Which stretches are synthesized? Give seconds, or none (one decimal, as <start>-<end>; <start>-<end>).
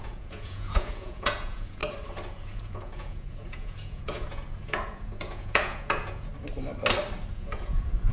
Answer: 0.0-1.8; 2.3-6.3; 7.3-8.1